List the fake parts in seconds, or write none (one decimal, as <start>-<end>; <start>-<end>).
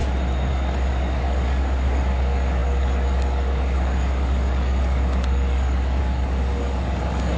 0.5-7.4